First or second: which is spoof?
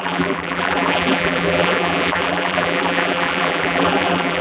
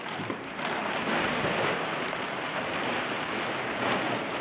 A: first